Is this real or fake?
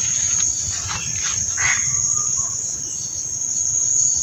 real